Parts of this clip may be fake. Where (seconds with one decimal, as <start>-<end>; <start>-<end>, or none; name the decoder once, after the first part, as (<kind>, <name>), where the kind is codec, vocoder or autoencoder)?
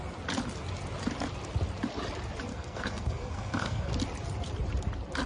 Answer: 2.5-3.9 (codec, SNAC)